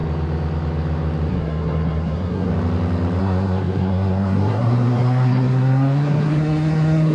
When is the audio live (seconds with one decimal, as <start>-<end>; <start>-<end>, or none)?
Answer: 0.0-1.3; 2.5-3.2